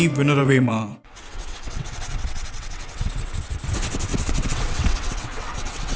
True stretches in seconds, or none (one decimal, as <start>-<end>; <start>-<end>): 0.0-0.4; 3.4-4.1